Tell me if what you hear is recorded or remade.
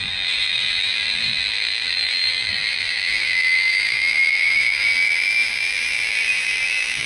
remade